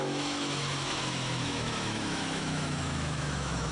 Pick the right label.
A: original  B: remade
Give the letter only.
B